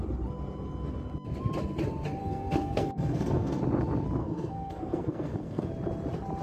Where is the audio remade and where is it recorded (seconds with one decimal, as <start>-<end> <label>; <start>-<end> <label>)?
0.0-2.2 recorded; 2.2-3.6 remade; 3.6-4.2 recorded; 4.2-5.7 remade; 5.7-6.4 recorded